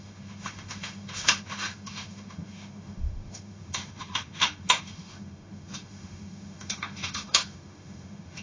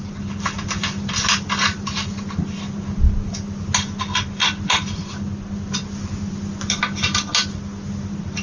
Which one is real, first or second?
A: second